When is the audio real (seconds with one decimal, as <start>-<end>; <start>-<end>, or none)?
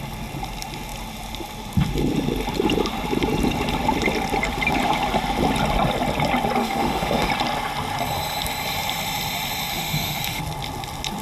0.0-6.6; 7.3-9.7; 10.4-11.2